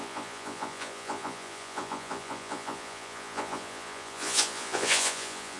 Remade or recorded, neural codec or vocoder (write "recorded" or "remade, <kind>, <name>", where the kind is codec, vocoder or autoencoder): remade, vocoder, Vocos